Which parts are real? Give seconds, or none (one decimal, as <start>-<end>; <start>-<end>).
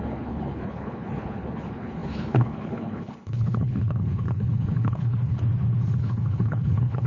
5.4-6.0